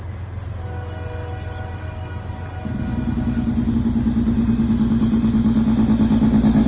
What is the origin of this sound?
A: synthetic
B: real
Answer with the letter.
B